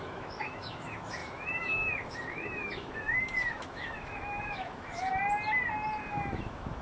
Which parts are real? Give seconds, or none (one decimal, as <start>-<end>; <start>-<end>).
5.1-5.9